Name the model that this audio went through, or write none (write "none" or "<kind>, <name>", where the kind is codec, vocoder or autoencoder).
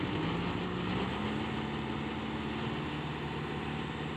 none